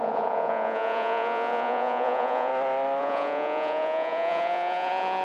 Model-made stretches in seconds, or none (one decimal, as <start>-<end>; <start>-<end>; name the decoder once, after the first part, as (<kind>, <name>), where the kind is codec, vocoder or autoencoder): 0.0-2.5 (vocoder, Vocos); 3.0-5.2